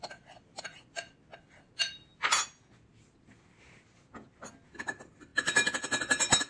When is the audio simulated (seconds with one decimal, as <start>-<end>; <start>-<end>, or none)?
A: none